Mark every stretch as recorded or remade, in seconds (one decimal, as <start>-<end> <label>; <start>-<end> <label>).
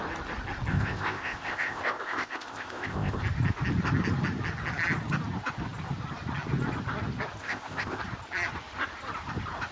0.0-0.7 recorded; 0.7-3.2 remade; 3.2-7.4 recorded; 7.4-8.0 remade; 8.0-9.7 recorded